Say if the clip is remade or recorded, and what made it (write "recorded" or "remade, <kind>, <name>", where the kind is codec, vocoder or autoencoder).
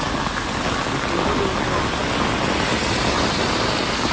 recorded